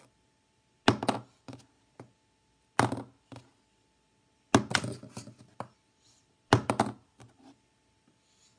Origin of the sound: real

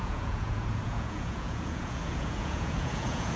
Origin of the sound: fake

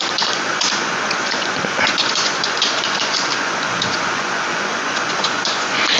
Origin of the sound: fake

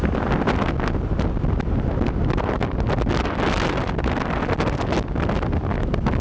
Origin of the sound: real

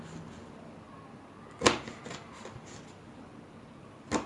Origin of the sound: real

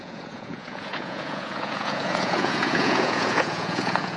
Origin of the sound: fake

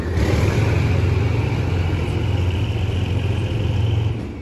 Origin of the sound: real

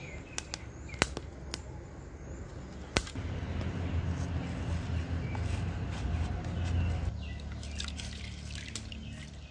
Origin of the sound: real